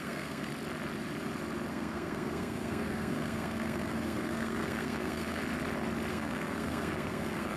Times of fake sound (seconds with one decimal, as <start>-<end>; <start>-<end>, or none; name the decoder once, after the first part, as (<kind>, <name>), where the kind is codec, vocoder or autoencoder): 0.0-0.5 (codec, SNAC); 1.7-5.4; 6.1-7.6